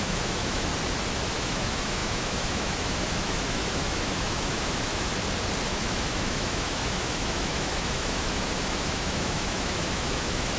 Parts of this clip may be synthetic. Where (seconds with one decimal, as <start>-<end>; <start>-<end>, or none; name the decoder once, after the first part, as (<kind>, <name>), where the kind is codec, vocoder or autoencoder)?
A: 0.0-0.7 (autoencoder, DAC-VAE); 1.3-5.1; 5.7-10.6